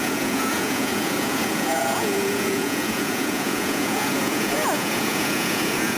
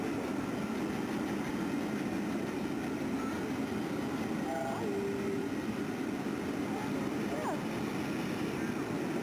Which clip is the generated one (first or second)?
first